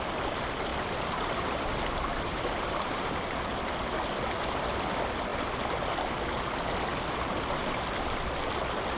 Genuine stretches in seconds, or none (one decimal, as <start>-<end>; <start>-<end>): 0.0-0.7; 1.7-2.1; 3.5-9.0